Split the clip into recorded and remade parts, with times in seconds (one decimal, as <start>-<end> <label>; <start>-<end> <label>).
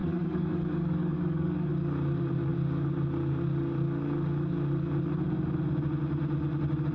0.0-1.7 remade; 1.7-6.9 recorded